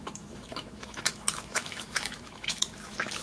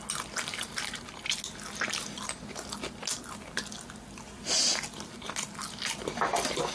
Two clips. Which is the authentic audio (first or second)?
second